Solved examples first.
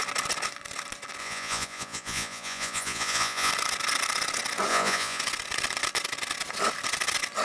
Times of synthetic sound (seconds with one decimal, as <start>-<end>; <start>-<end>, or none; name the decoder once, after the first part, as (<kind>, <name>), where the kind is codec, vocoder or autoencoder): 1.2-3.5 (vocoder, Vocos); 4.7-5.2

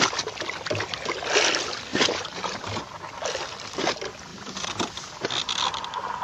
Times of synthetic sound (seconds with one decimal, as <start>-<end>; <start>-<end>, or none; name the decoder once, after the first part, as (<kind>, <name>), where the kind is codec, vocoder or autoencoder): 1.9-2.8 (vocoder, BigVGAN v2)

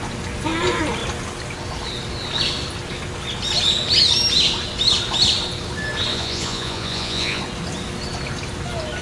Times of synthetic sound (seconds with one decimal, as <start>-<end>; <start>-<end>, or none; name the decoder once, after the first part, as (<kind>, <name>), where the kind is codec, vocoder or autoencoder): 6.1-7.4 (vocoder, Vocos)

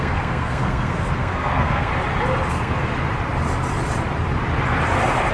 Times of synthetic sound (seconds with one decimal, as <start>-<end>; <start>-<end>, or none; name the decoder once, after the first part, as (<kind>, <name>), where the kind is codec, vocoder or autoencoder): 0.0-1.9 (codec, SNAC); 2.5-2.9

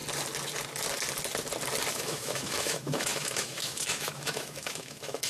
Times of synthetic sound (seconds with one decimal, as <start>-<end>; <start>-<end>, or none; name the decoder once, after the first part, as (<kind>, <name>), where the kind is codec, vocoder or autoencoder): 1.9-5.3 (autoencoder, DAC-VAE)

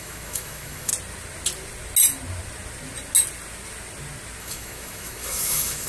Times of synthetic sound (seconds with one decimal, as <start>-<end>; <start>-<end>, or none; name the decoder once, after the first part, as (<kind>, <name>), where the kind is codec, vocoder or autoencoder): 0.0-0.9 (autoencoder, DAC-VAE); 4.4-5.9